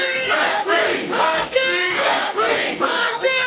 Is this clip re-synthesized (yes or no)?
yes